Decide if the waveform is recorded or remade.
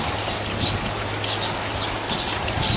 recorded